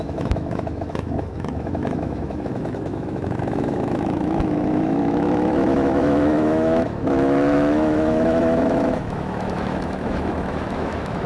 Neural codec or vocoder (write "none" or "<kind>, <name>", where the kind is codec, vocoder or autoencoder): autoencoder, DAC-VAE